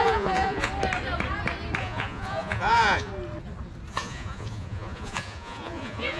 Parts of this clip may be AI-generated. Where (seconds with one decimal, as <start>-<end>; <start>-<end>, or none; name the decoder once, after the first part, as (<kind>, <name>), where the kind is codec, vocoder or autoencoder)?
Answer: 0.0-0.7 (vocoder, Vocos); 1.8-3.1; 3.9-6.2

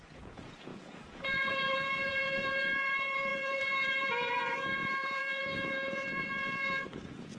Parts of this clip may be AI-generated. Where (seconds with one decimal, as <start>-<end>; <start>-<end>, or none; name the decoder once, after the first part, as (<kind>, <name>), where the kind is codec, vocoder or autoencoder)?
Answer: 0.0-7.4 (vocoder, Vocos)

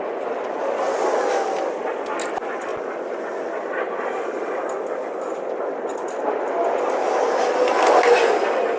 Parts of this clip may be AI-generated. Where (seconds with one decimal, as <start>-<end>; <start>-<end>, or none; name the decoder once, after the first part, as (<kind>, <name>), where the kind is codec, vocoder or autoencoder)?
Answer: none